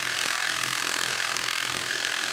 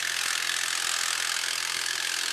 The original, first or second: second